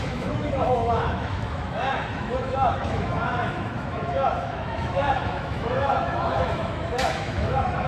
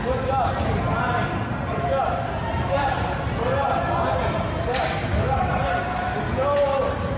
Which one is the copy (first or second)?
first